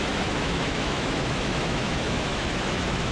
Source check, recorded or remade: remade